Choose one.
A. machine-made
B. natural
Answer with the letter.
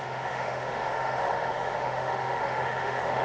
A